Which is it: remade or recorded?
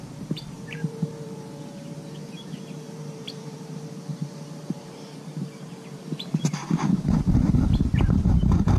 remade